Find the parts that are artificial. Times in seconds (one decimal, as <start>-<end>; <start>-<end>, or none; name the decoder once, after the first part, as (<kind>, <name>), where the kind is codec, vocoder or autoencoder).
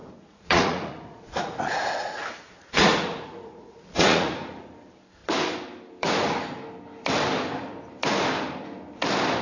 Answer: 0.0-4.7 (vocoder, Vocos)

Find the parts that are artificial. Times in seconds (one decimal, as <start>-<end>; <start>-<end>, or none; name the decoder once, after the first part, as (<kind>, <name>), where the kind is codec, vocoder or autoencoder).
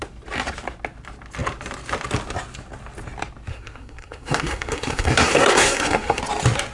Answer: 3.5-6.2 (codec, SNAC)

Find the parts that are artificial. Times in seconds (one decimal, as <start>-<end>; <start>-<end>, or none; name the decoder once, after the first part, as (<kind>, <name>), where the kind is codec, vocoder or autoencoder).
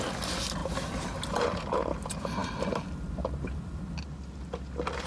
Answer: 0.6-1.6 (vocoder, BigVGAN v2)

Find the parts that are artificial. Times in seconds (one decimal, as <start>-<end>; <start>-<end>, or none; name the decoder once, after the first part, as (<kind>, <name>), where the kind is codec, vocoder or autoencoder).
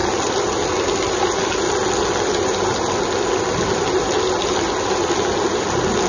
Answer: none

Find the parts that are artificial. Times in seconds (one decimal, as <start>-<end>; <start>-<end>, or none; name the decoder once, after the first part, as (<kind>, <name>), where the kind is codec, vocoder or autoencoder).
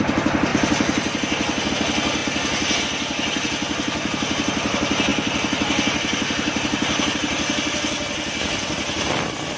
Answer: none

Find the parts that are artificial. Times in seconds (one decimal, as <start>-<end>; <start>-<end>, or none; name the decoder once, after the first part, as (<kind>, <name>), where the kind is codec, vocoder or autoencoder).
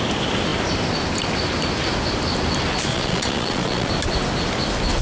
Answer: 2.9-3.9 (vocoder, Vocos)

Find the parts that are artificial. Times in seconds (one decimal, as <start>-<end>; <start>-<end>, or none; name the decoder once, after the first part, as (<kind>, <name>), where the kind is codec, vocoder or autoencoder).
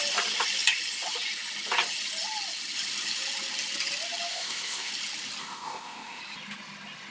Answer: 4.3-4.9 (codec, ZipCodec); 5.4-6.2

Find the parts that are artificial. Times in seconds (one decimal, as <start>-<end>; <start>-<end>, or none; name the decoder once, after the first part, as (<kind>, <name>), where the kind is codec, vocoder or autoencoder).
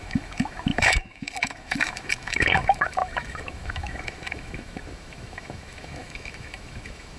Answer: 0.0-7.2 (autoencoder, DAC-VAE)